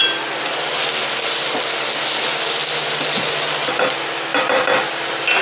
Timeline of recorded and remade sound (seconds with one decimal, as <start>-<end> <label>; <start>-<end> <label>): 0.0-5.4 recorded